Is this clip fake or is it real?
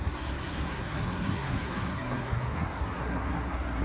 fake